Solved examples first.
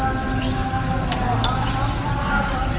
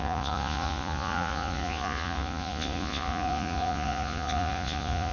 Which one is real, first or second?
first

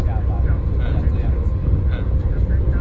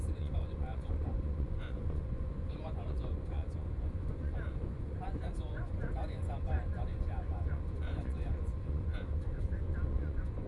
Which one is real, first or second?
first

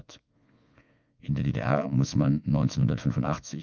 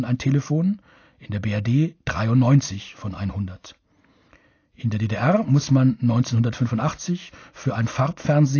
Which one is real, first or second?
second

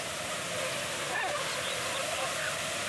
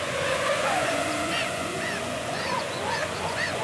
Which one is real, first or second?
first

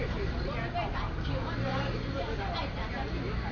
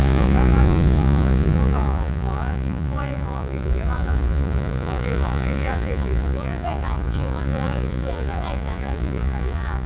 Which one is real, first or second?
first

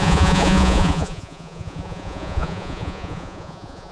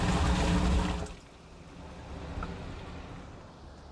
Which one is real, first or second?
second